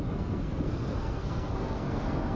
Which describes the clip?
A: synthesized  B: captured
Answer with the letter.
A